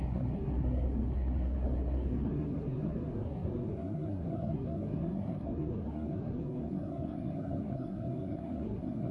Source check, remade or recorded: remade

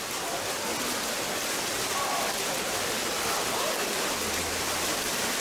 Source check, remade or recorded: recorded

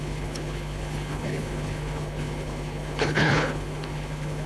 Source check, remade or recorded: remade